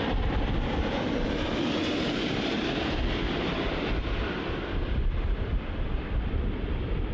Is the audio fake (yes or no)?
yes